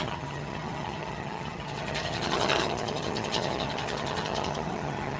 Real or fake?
fake